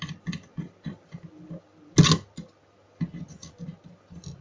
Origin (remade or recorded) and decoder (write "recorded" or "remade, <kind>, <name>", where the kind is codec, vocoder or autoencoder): recorded